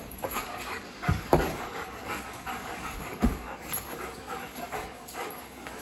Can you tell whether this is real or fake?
fake